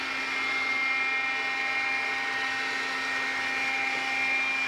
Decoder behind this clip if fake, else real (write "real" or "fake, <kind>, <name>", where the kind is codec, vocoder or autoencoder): real